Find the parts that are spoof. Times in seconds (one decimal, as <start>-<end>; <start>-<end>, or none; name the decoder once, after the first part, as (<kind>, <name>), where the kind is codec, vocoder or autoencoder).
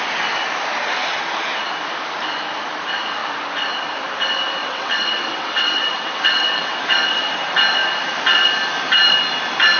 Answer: 4.6-6.8 (vocoder, WaveNeXt)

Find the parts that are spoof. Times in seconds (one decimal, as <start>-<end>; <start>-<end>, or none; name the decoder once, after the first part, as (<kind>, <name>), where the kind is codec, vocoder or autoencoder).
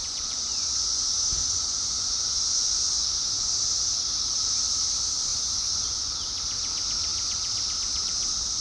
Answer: 0.0-3.5 (vocoder, Vocos); 5.3-6.1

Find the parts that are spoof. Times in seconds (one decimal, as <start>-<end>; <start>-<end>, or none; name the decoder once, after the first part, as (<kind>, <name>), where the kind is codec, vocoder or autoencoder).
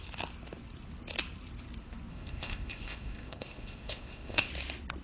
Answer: 2.1-4.5 (codec, ZipCodec)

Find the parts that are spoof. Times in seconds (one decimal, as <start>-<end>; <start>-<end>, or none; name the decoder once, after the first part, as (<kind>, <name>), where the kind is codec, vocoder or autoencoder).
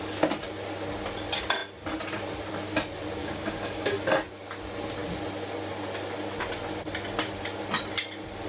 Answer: 3.2-3.9 (codec, DAC)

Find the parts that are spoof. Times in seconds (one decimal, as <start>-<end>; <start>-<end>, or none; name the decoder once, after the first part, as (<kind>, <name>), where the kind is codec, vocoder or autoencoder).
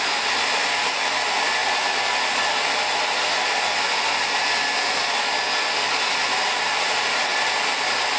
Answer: none